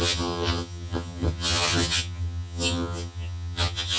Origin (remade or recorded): remade